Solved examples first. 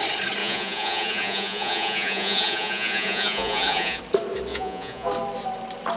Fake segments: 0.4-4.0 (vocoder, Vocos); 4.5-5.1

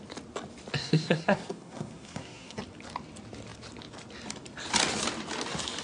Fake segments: 0.8-2.6 (codec, SNAC)

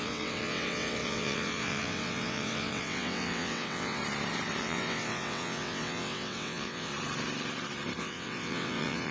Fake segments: 0.0-4.0 (vocoder, WaveNeXt); 4.6-6.9; 8.0-9.1